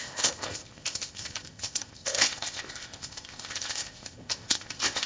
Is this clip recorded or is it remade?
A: remade